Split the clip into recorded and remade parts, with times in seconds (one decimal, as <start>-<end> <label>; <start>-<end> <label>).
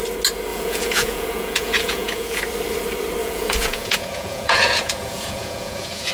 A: 0.0-0.5 recorded; 0.5-2.4 remade; 2.4-3.2 recorded; 3.2-6.1 remade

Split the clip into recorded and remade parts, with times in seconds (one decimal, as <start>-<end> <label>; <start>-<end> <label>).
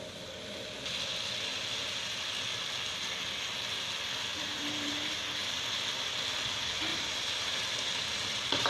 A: 0.0-1.5 recorded; 1.5-2.2 remade; 2.2-4.3 recorded; 4.3-5.1 remade; 5.1-6.9 recorded; 6.9-8.7 remade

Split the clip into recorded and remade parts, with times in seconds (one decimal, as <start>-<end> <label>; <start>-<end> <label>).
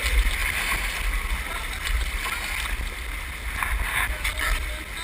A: 0.0-5.0 recorded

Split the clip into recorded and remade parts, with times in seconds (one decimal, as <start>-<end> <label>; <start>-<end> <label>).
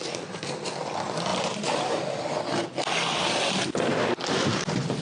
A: 0.0-5.0 recorded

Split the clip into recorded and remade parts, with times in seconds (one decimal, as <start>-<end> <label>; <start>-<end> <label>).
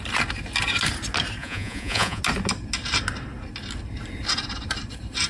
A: 0.0-1.4 recorded; 1.4-2.2 remade; 2.2-5.3 recorded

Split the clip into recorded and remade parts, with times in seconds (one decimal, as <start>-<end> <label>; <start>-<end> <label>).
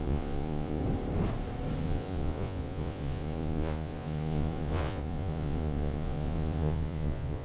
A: 0.0-0.8 remade; 0.8-1.8 recorded; 1.8-7.4 remade